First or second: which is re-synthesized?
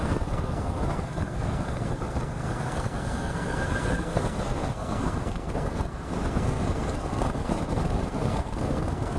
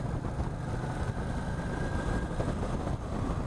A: first